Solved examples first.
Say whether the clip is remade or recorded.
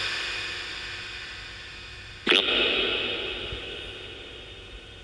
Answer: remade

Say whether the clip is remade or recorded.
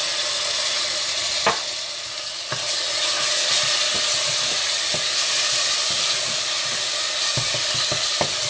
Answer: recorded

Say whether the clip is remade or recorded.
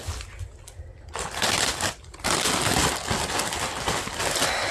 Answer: recorded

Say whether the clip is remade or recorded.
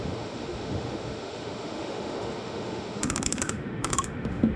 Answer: remade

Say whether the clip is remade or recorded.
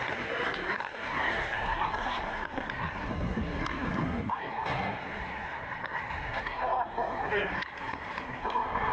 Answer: remade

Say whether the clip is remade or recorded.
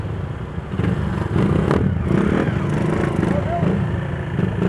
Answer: recorded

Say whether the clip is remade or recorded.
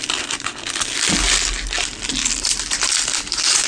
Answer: recorded